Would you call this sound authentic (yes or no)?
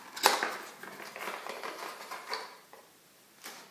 yes